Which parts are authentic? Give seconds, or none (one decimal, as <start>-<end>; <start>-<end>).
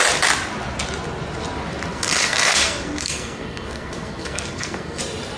0.0-1.9; 5.0-5.4